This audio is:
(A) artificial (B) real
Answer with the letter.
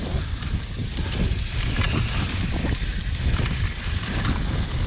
B